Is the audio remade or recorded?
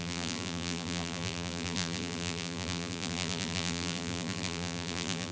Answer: remade